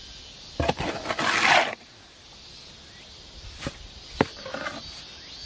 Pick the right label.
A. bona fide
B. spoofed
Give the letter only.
A